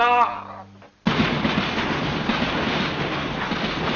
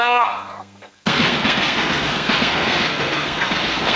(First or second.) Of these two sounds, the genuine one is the first